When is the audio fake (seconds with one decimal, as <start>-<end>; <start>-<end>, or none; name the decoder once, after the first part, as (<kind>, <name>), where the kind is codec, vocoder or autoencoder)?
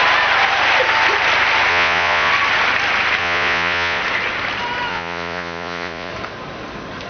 1.7-2.3 (vocoder, Vocos); 3.2-4.0; 4.9-6.1